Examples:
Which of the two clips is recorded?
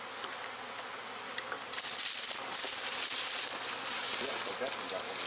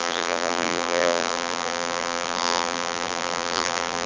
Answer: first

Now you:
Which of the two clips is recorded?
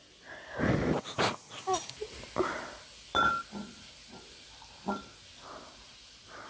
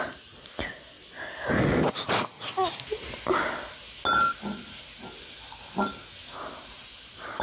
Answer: second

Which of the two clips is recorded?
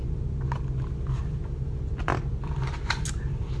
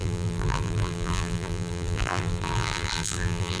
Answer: first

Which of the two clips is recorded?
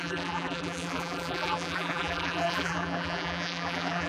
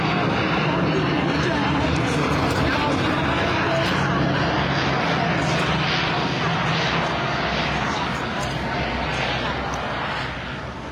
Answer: second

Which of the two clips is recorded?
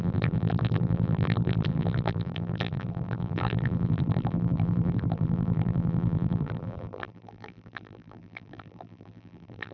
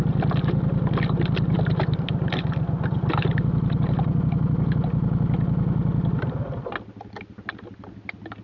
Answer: second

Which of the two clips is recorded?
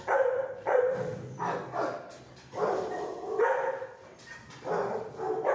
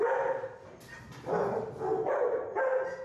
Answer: second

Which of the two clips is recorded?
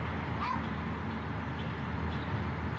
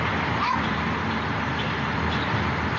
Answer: first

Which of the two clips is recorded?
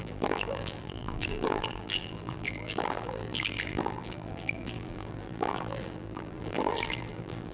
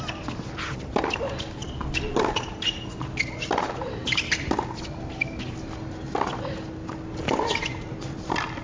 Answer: second